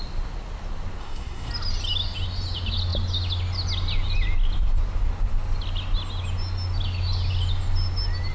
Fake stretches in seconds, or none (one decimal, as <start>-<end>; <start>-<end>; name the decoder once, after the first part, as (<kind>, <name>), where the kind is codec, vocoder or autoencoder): 1.0-1.5 (codec, SNAC)